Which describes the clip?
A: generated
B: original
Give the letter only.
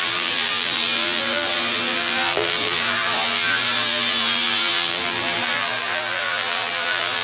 A